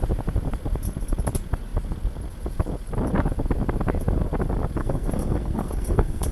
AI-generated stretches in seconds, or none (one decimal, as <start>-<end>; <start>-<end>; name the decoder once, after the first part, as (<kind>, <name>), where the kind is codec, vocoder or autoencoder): 4.8-6.3 (codec, SNAC)